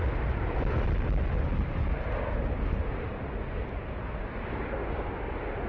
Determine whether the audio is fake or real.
real